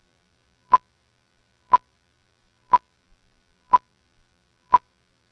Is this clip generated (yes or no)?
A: yes